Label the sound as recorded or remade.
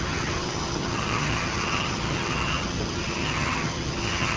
remade